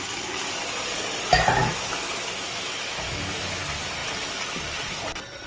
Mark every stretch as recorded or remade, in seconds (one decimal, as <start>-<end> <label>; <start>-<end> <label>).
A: 0.0-1.6 recorded; 1.6-3.4 remade; 3.4-5.5 recorded